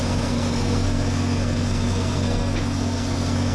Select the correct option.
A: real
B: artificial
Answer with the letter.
B